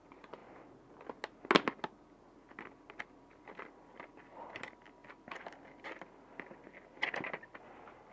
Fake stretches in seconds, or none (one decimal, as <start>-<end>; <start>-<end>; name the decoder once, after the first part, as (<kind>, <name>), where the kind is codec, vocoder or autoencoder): none